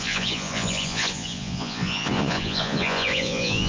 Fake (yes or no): yes